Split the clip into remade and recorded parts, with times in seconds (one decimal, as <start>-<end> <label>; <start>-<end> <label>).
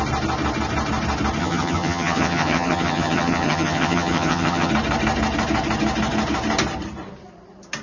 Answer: 0.0-1.4 recorded; 1.4-4.7 remade; 4.7-7.8 recorded